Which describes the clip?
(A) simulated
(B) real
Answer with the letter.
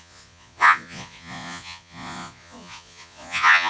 A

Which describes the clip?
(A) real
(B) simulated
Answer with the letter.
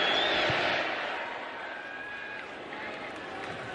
A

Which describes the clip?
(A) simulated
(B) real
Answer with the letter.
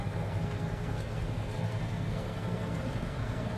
A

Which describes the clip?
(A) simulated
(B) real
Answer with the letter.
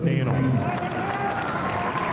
B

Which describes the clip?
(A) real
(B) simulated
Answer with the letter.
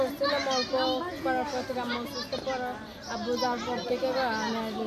A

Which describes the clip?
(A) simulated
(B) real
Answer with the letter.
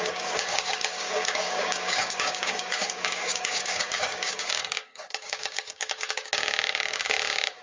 A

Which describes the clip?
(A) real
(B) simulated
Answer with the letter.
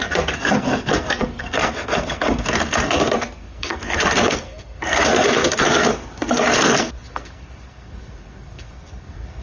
B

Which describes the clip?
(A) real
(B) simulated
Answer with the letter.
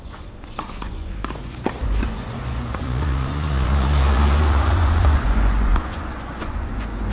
B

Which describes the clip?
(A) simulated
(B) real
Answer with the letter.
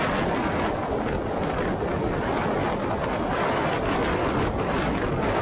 B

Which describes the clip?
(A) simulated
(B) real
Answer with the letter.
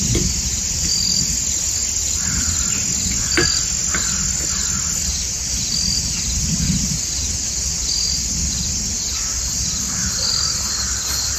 B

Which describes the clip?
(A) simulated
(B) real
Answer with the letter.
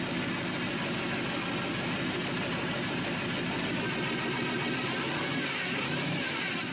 B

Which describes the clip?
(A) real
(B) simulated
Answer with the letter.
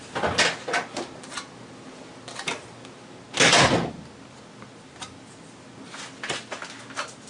A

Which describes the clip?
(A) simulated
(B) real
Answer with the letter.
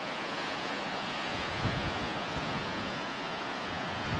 A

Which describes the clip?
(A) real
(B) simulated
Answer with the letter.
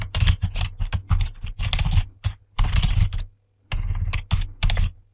A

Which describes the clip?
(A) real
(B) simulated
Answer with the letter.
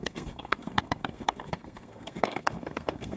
B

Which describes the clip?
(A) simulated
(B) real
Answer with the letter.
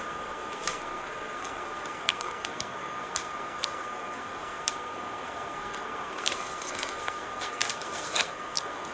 A